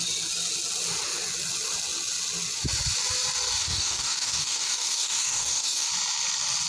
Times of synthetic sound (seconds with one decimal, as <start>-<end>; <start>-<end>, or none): 3.6-5.9